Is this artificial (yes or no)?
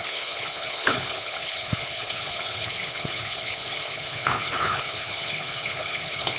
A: yes